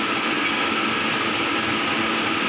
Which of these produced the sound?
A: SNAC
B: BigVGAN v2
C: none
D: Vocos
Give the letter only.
C